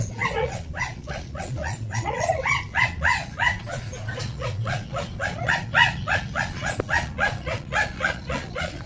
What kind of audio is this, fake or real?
fake